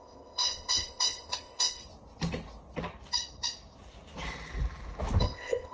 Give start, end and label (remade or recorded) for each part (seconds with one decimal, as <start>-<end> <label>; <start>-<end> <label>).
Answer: 0.0-1.8 remade; 1.8-5.2 recorded; 5.2-5.7 remade